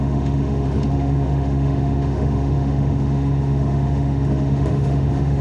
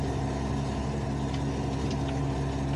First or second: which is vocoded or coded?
first